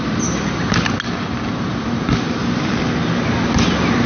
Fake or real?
real